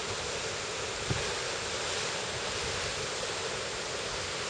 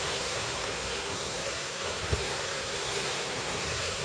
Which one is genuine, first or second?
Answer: first